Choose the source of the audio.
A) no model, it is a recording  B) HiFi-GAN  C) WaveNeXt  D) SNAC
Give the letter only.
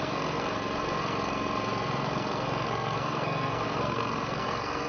D